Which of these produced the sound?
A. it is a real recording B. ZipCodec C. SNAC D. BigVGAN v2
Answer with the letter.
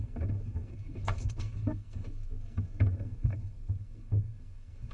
C